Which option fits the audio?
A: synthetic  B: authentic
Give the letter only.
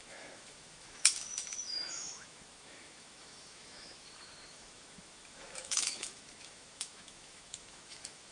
A